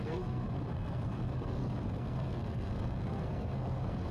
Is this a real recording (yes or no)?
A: no